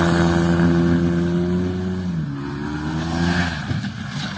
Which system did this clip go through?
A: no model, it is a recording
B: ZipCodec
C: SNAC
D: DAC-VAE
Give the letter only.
A